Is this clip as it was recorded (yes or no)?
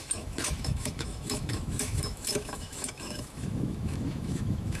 no